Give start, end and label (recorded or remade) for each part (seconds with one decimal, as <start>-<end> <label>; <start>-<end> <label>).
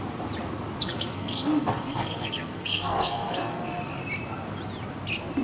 0.0-0.8 recorded; 0.8-4.0 remade; 4.0-5.4 recorded